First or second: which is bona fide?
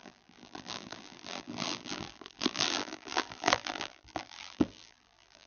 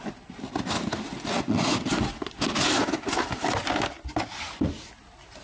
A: second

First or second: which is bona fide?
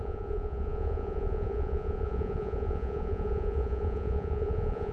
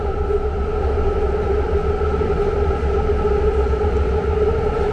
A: second